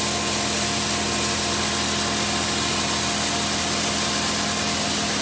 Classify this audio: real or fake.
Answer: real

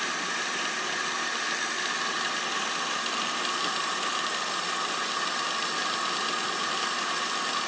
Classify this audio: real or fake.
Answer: real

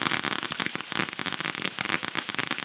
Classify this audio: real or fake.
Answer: real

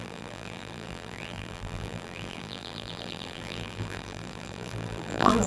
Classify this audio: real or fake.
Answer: fake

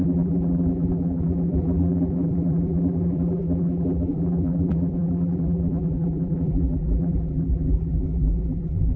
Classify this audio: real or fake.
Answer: fake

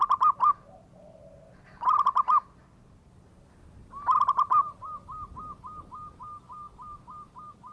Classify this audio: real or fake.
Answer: real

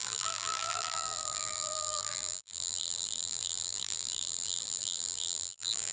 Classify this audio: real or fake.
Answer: fake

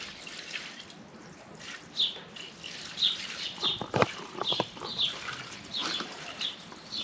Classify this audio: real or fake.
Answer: fake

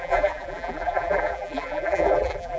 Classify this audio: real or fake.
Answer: fake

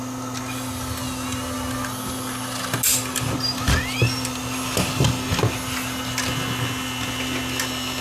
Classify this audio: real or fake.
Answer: real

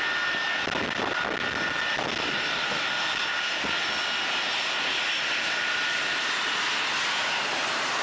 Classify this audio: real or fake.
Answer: real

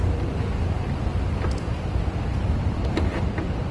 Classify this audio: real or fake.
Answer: fake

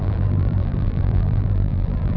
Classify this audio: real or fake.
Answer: fake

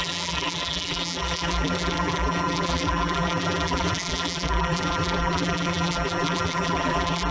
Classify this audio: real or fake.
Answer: fake